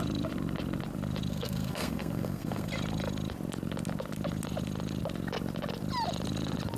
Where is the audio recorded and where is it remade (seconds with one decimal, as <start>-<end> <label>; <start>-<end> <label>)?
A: 0.0-1.3 recorded; 1.3-2.7 remade; 2.7-6.8 recorded